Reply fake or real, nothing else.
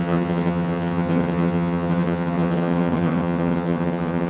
fake